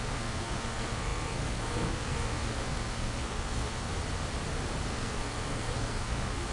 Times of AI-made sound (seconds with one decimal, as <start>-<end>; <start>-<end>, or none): 0.0-3.9; 4.9-6.5